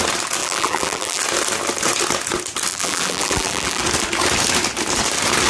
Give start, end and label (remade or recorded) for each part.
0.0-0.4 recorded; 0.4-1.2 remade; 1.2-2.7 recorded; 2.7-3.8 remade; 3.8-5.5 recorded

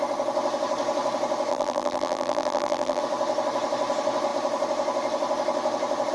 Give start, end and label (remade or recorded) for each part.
0.0-1.5 recorded; 1.5-3.0 remade; 3.0-6.1 recorded